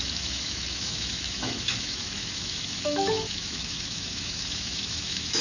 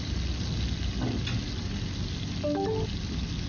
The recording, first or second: second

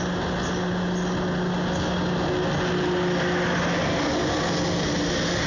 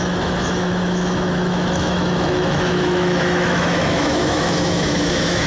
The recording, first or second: first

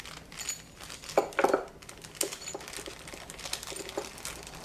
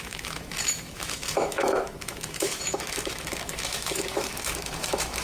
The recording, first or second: first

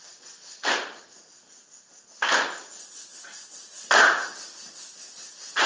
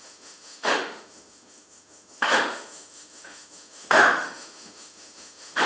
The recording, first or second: first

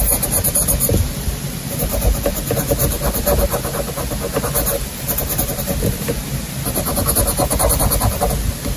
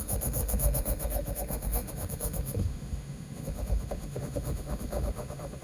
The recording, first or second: first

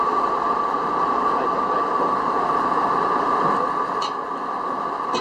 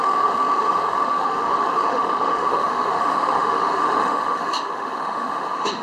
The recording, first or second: first